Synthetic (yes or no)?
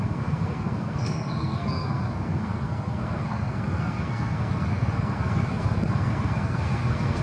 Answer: yes